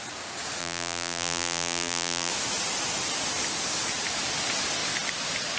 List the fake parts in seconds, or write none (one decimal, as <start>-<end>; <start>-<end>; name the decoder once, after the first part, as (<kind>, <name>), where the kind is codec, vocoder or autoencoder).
0.6-2.3 (vocoder, BigVGAN v2)